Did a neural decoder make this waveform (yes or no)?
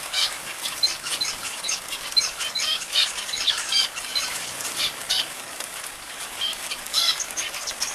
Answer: yes